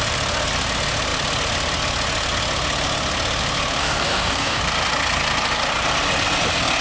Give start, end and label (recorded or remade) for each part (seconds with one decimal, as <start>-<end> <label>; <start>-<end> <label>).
0.0-3.8 recorded; 3.8-4.6 remade; 4.6-6.8 recorded